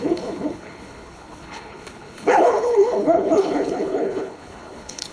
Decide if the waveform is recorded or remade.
remade